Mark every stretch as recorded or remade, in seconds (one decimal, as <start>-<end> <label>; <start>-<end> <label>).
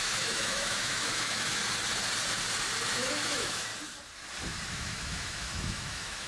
0.0-1.6 remade; 1.6-2.9 recorded; 2.9-3.7 remade; 3.7-4.7 recorded; 4.7-6.3 remade